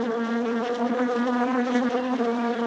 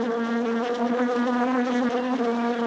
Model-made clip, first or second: first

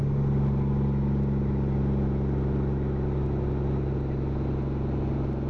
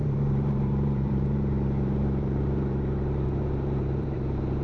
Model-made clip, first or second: second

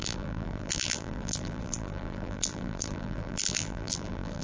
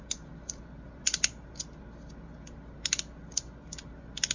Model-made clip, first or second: first